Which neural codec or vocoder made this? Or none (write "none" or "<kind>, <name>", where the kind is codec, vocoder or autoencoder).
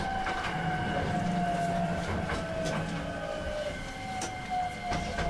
none